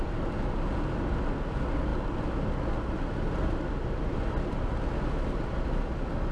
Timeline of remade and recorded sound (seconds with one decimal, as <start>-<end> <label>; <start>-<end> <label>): 0.0-6.3 recorded

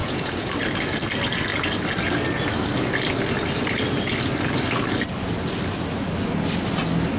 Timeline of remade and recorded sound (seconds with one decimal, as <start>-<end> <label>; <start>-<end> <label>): 0.0-0.5 remade; 0.5-7.2 recorded

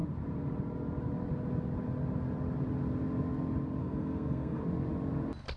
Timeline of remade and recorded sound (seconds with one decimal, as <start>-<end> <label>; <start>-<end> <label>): 0.0-3.8 recorded; 3.8-4.6 remade; 4.6-5.6 recorded

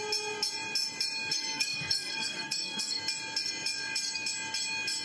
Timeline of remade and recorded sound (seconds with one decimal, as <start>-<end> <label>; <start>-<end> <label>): 0.0-1.3 recorded; 1.3-3.0 remade; 3.0-5.0 recorded

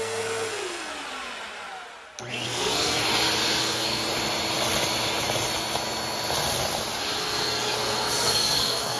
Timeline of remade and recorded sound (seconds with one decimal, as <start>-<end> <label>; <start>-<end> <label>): 0.0-0.9 remade; 0.9-2.3 recorded; 2.3-3.0 remade; 3.0-3.6 recorded; 3.6-4.0 remade; 4.0-7.2 recorded; 7.2-9.0 remade

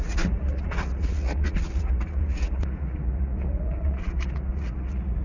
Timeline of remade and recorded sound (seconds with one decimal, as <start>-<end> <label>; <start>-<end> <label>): 0.0-5.2 remade